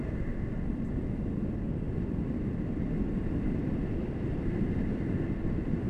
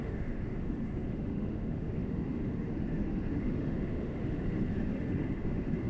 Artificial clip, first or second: second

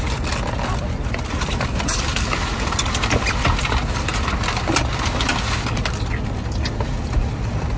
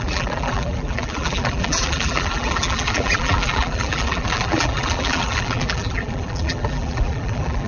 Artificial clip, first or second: second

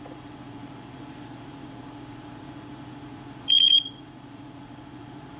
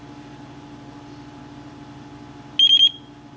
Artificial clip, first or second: first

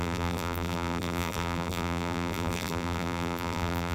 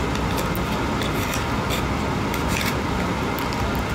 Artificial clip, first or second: first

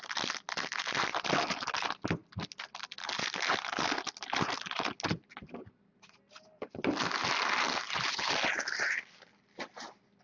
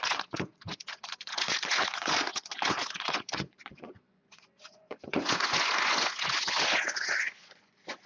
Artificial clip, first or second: second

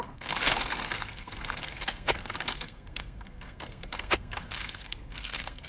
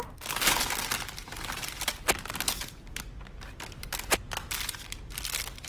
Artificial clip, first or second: first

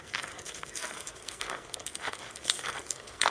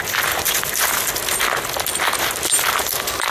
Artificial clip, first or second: first